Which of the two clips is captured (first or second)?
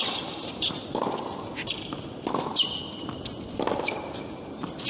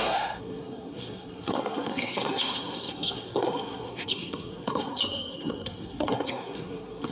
first